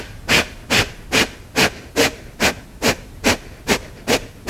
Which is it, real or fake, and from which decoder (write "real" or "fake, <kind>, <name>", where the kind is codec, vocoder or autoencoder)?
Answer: real